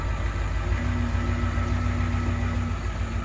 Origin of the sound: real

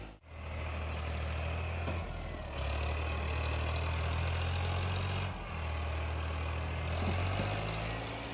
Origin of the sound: real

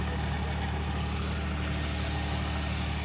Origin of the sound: real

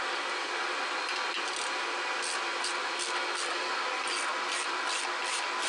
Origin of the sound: fake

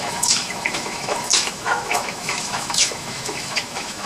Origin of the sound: fake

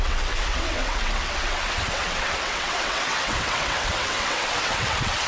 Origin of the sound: fake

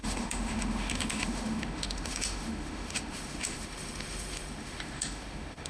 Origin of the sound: fake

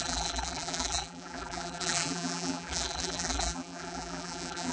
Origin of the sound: fake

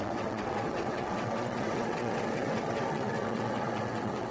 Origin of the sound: fake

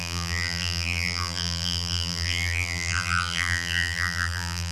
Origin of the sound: fake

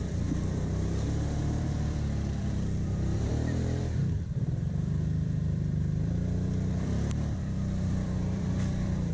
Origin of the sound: fake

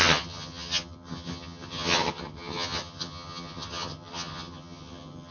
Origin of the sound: fake